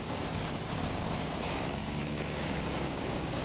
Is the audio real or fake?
fake